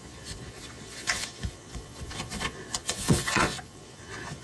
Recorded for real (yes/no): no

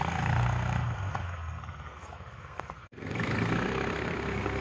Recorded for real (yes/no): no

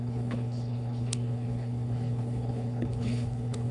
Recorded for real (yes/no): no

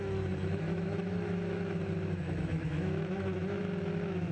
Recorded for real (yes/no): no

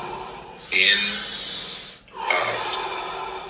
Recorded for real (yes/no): yes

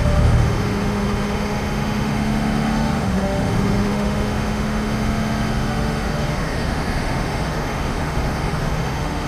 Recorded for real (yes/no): no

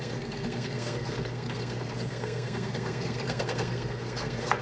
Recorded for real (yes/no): no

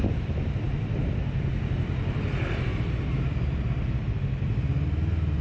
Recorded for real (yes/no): yes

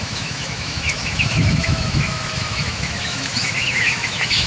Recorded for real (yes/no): no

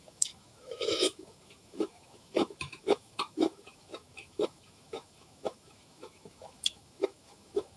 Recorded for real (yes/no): no